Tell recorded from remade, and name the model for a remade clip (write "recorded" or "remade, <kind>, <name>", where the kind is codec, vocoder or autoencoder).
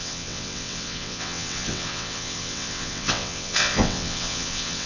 remade, vocoder, WaveNeXt